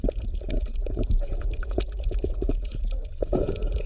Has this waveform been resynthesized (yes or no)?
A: yes